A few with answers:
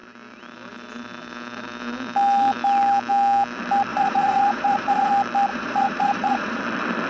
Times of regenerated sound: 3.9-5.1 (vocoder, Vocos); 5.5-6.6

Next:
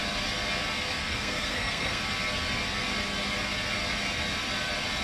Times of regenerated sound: 1.0-2.0 (codec, SNAC)

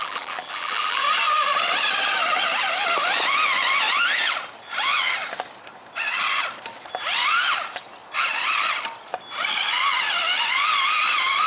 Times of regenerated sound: 0.0-1.0 (vocoder, BigVGAN v2)

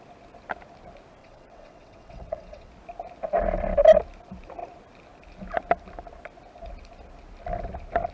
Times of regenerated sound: 1.2-2.7 (vocoder, WaveNeXt)